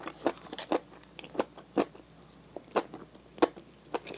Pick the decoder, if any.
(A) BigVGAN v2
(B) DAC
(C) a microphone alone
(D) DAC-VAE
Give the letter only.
C